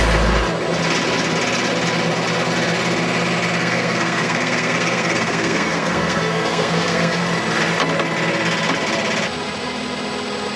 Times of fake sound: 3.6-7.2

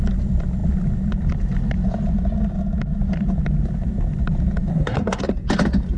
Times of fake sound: 4.7-5.2

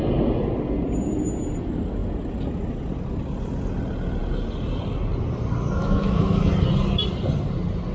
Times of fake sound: 5.8-6.5

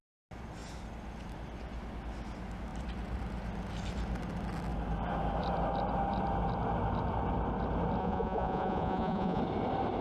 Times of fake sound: 8.0-9.4

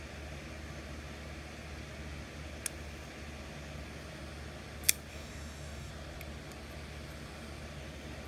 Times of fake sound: 5.1-5.9

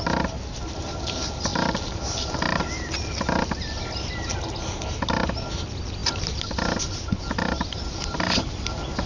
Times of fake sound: none

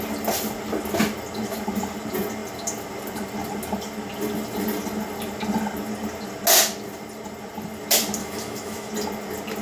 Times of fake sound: 8.2-8.9

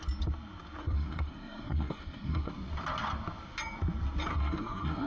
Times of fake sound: 0.8-2.5; 4.3-5.1